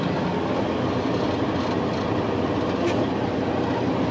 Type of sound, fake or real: real